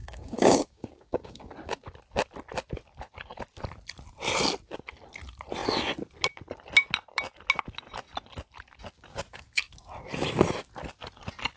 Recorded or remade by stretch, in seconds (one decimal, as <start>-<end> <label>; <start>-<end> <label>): 0.0-1.5 remade; 1.5-9.1 recorded; 9.1-9.6 remade; 9.6-11.6 recorded